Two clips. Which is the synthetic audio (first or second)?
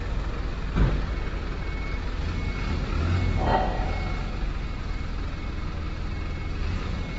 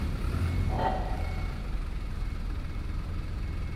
second